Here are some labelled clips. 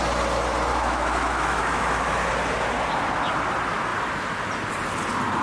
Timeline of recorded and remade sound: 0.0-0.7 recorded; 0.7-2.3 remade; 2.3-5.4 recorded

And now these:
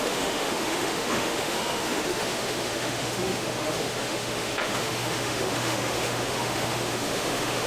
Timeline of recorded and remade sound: 0.0-7.7 remade